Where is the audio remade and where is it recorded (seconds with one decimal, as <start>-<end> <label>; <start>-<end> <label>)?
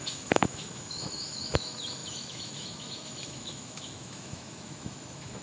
0.0-5.4 remade